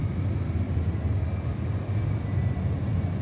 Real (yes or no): yes